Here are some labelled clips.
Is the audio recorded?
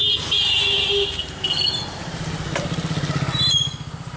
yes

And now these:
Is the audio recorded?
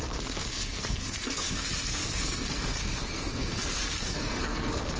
no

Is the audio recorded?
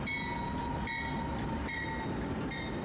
yes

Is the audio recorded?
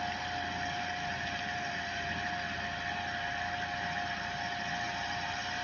yes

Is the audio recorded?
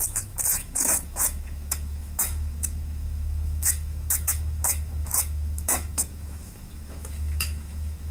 no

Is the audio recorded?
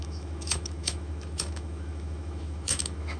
no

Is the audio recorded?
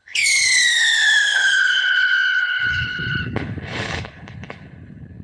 no